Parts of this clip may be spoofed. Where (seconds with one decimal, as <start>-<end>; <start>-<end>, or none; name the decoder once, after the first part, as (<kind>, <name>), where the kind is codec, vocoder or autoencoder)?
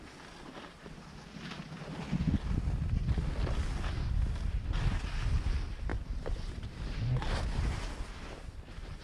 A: none